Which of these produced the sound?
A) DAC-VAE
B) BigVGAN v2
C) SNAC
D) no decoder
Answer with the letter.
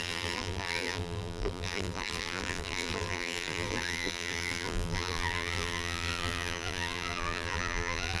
B